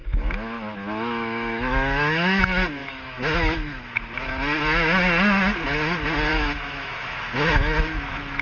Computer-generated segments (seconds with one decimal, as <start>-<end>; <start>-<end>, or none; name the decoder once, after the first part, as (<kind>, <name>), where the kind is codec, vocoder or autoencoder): 0.0-2.4 (autoencoder, DAC-VAE); 2.8-4.0; 6.3-8.4